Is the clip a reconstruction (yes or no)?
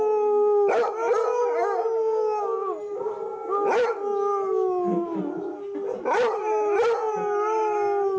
no